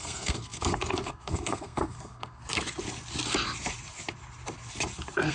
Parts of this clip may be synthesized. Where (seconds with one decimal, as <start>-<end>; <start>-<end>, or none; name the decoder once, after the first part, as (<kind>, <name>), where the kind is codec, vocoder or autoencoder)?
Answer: 0.0-2.4 (codec, SNAC)